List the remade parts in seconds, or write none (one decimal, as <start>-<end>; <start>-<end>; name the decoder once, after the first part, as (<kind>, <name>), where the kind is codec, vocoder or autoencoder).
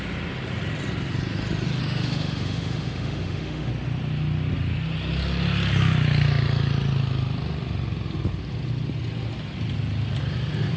1.8-3.7 (autoencoder, DAC-VAE)